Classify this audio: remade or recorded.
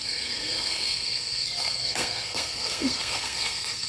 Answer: remade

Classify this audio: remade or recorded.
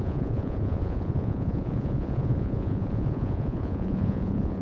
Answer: remade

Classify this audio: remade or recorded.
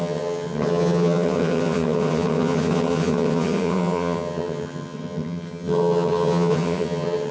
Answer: remade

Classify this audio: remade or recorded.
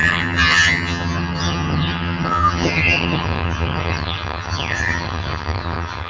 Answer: remade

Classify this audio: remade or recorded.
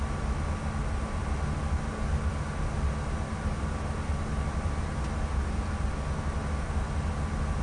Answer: recorded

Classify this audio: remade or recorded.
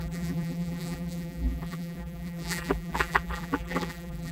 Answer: remade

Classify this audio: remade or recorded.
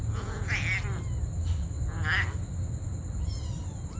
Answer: recorded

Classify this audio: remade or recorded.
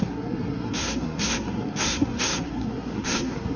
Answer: remade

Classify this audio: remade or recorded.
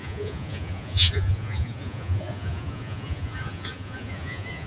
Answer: remade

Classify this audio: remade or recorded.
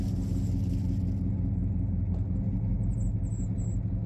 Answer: recorded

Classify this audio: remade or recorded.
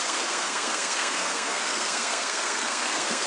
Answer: remade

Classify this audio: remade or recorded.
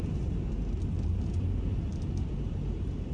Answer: recorded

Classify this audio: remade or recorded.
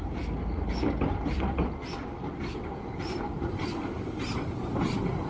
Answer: recorded